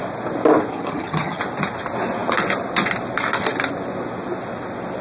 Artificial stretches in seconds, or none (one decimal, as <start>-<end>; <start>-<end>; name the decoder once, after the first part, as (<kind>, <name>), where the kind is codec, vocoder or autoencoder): 0.7-1.4 (vocoder, HiFi-GAN)